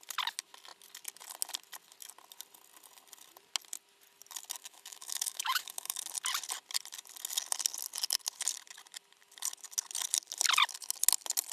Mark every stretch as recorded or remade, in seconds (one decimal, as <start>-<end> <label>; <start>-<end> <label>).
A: 0.0-4.6 recorded; 4.6-6.0 remade; 6.0-11.5 recorded